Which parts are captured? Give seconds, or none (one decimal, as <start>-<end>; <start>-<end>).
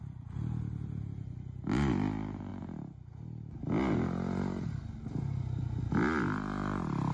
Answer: 0.0-7.1